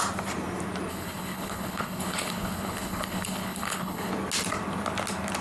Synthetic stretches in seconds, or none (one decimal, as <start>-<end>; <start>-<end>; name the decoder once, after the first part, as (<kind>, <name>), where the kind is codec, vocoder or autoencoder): 0.9-4.1 (codec, HILCodec)